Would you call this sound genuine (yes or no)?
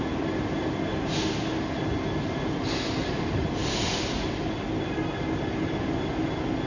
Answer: yes